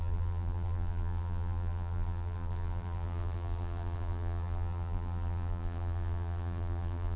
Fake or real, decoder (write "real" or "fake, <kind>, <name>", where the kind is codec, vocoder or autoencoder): fake, vocoder, BigVGAN v2